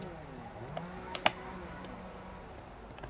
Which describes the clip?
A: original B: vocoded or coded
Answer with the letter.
A